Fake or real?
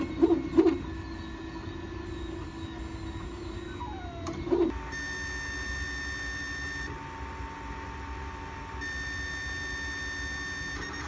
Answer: real